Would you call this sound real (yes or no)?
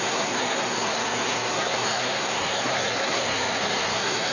no